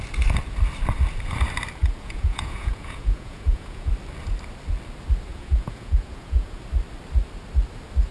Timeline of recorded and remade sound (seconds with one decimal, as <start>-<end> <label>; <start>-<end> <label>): 0.0-1.8 recorded; 1.8-3.9 remade; 3.9-5.3 recorded; 5.3-6.6 remade; 6.6-8.1 recorded

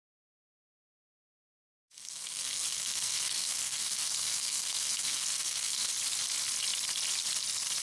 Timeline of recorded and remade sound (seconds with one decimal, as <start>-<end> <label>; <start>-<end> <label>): 0.0-1.3 recorded; 1.3-5.9 remade; 5.9-7.8 recorded

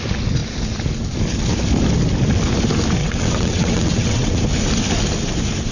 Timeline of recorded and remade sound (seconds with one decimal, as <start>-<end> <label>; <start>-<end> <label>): 0.0-3.0 recorded; 3.0-4.4 remade; 4.4-5.7 recorded

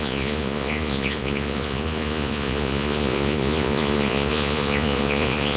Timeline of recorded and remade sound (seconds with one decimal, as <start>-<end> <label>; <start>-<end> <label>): 0.0-5.6 remade

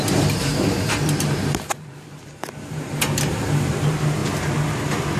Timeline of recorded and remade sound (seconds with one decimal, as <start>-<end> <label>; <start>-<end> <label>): 0.0-4.2 remade; 4.2-5.2 recorded